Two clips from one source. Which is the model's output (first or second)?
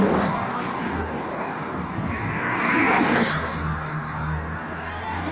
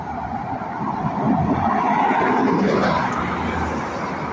first